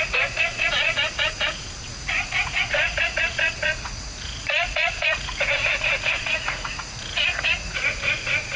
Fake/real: fake